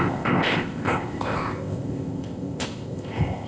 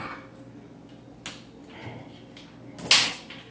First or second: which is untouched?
second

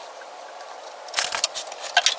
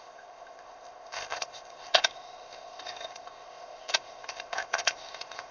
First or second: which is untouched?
first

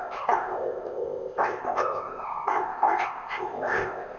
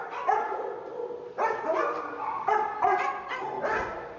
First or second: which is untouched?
second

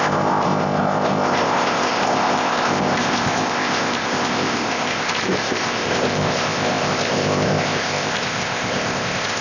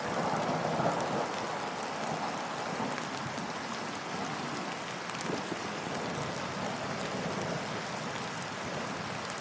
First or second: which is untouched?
second